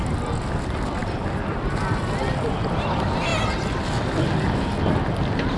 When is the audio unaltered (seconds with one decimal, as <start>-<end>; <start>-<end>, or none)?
0.0-5.6